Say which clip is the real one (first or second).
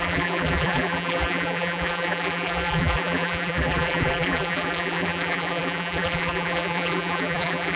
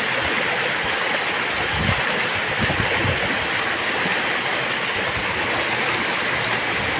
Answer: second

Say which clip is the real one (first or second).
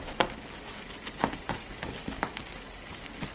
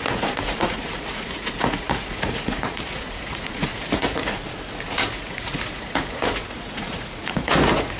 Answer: first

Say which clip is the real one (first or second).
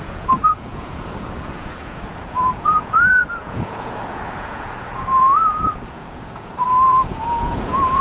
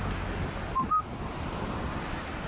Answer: second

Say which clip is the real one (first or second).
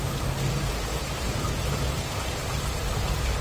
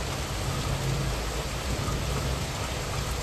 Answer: second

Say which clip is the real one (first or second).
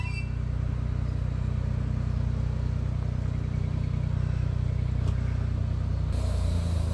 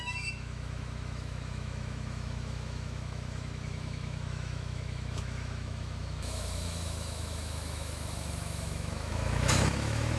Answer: first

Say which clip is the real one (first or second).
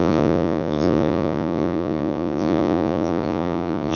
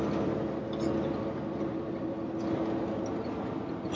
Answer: second